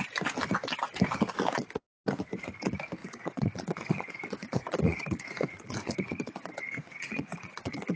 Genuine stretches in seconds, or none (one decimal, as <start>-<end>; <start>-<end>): 0.0-3.0